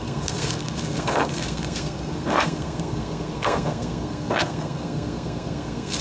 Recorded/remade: remade